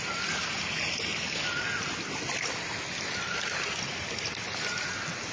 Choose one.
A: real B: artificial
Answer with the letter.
A